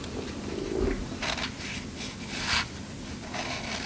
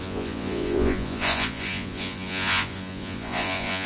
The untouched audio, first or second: first